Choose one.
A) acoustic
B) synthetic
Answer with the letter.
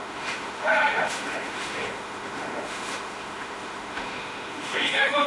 B